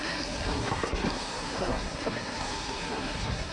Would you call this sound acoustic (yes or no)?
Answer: no